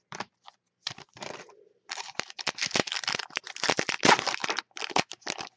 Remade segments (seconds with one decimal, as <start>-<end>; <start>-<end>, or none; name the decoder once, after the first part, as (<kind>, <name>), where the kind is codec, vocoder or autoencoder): 0.0-5.6 (vocoder, BigVGAN v2)